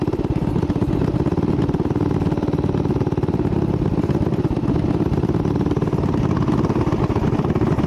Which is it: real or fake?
real